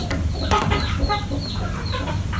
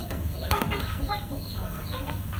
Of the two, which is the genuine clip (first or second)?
first